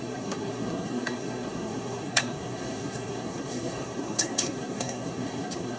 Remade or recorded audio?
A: remade